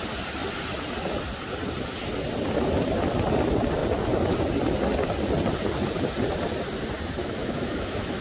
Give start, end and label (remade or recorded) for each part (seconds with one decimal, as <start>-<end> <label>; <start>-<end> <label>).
0.0-7.2 recorded; 7.2-8.2 remade